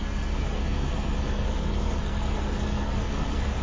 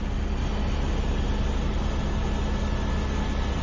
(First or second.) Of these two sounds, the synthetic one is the first